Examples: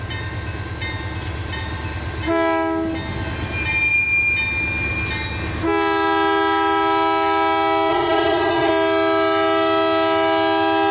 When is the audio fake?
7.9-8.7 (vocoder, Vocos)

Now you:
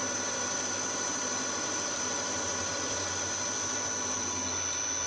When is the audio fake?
0.0-3.1 (vocoder, BigVGAN v2)

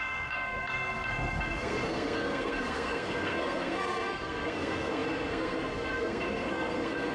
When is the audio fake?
0.0-7.1 (codec, SNAC)

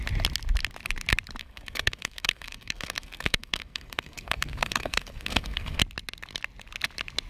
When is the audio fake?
1.4-5.8 (codec, SNAC)